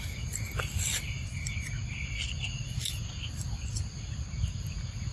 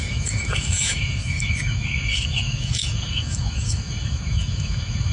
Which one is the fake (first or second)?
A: second